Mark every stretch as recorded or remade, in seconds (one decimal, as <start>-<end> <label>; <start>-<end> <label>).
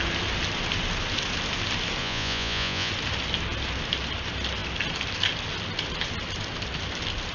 0.0-2.0 recorded; 2.0-2.9 remade; 2.9-7.3 recorded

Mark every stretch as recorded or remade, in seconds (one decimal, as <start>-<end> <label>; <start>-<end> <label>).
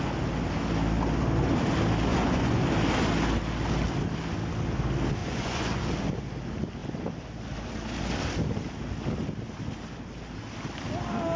0.0-2.1 recorded; 2.1-2.6 remade; 2.6-5.2 recorded; 5.2-5.8 remade; 5.8-11.4 recorded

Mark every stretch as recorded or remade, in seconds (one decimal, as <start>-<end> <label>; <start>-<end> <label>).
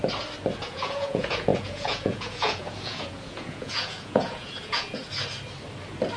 0.0-0.6 recorded; 0.6-5.0 remade; 5.0-6.2 recorded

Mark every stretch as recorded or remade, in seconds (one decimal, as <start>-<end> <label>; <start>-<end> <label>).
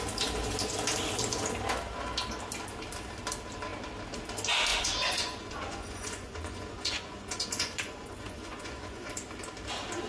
0.0-4.7 recorded; 4.7-9.1 remade; 9.1-10.1 recorded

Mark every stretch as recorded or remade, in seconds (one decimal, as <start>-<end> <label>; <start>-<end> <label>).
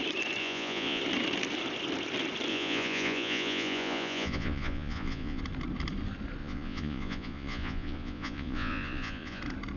0.0-0.4 recorded; 0.4-1.0 remade; 1.0-2.5 recorded; 2.5-5.4 remade; 5.4-6.4 recorded; 6.4-9.4 remade; 9.4-9.8 recorded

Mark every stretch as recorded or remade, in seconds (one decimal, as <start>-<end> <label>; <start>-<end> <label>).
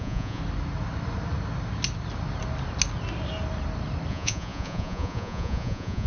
0.0-0.4 remade; 0.4-4.1 recorded; 4.1-6.1 remade